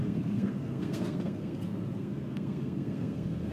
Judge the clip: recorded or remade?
remade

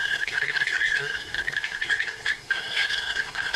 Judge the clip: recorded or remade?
remade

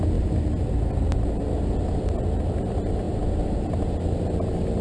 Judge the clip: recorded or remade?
recorded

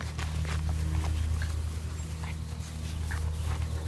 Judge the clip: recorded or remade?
recorded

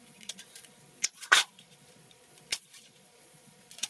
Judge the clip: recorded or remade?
remade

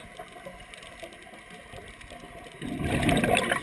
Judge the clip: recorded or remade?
recorded